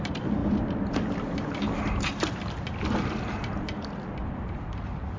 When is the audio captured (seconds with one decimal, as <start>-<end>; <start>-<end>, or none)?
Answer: 0.0-5.2